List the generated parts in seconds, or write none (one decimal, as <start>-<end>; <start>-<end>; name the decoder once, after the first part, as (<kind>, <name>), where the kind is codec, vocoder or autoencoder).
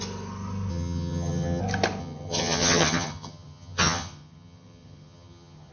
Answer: 0.7-1.6 (vocoder, HiFi-GAN); 2.0-5.7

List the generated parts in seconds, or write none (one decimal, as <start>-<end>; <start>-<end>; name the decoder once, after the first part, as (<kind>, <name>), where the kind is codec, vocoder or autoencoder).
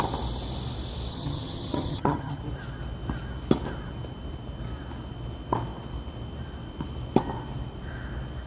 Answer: 1.1-2.4 (vocoder, HiFi-GAN)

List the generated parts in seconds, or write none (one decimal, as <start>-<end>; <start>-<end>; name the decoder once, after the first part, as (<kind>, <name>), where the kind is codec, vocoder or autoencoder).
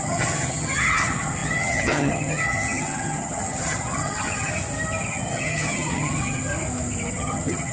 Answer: 0.0-4.5 (vocoder, HiFi-GAN); 5.1-6.5; 7.1-7.7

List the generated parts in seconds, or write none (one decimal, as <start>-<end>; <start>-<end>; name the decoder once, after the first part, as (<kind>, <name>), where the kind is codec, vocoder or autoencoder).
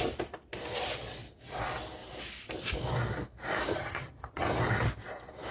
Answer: 3.7-4.4 (vocoder, HiFi-GAN)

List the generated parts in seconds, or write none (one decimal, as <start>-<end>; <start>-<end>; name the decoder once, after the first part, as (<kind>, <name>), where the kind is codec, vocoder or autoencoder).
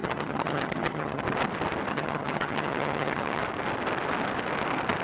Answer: 0.0-1.2 (vocoder, HiFi-GAN); 1.9-3.4